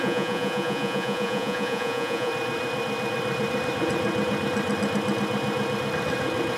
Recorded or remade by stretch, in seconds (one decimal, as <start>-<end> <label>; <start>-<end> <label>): 0.0-2.3 remade; 2.3-6.6 recorded